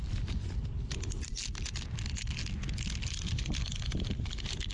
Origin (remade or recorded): recorded